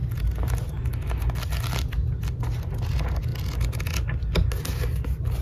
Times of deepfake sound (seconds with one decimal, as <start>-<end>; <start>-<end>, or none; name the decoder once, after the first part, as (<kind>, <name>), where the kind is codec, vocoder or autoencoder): none